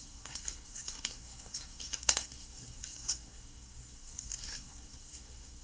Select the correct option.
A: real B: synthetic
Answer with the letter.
B